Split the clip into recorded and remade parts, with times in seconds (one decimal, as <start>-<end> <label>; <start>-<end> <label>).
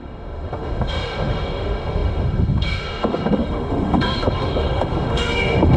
0.0-5.8 remade